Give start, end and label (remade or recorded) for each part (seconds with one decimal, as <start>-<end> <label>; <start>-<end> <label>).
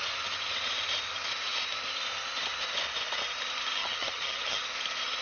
0.0-3.8 recorded; 3.8-4.6 remade; 4.6-5.2 recorded